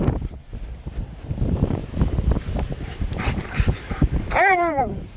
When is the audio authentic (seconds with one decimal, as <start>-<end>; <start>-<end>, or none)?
0.5-1.1; 1.8-3.0